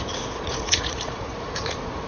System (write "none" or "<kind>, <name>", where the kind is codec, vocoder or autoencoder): vocoder, Vocos